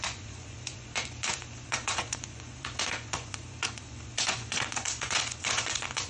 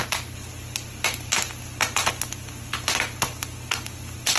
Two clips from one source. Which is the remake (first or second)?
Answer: first